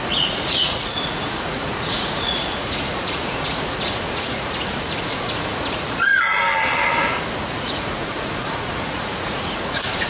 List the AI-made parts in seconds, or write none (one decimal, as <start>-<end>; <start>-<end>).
0.0-6.1; 7.0-10.1